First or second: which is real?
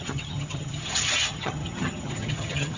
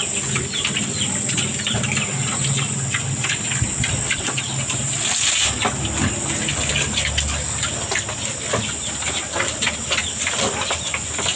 second